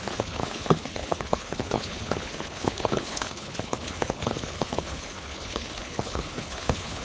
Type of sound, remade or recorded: remade